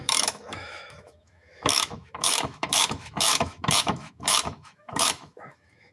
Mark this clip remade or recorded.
remade